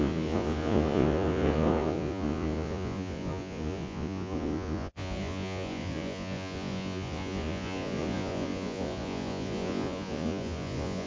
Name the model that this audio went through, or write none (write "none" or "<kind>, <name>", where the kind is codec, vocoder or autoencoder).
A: vocoder, Vocos